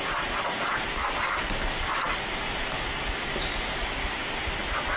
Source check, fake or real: real